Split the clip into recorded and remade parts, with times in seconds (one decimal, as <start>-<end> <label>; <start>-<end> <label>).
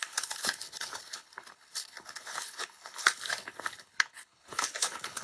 0.0-5.2 remade